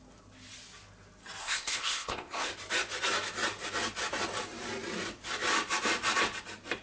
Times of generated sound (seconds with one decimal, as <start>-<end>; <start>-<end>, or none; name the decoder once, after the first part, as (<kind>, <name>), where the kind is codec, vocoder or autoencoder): 1.4-2.5 (codec, ZipCodec)